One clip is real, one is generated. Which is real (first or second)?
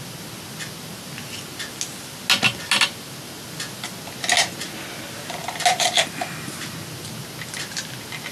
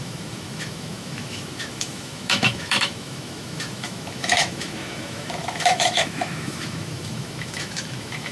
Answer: first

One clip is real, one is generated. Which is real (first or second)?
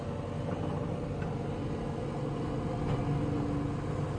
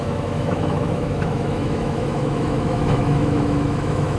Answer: first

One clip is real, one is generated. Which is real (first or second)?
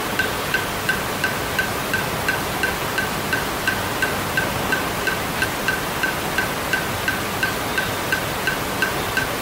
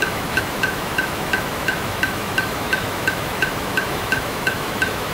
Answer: first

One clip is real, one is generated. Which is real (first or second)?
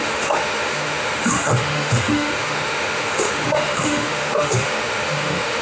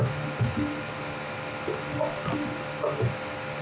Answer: second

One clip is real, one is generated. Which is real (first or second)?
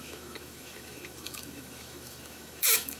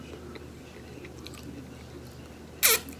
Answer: second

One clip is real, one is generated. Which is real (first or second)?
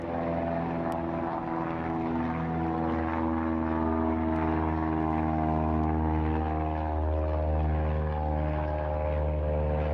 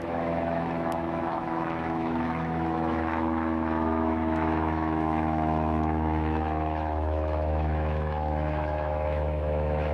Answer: first